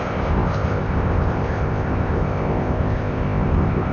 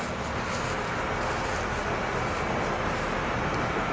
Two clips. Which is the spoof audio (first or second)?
first